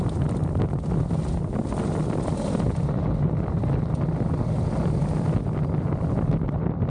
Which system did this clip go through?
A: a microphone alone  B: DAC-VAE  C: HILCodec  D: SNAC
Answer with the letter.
A